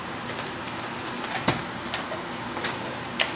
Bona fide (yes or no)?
yes